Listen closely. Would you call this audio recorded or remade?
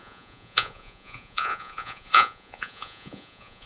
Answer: remade